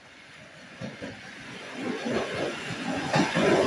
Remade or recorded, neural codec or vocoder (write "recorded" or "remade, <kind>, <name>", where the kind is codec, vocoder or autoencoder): remade, vocoder, Vocos